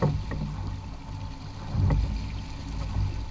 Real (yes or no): yes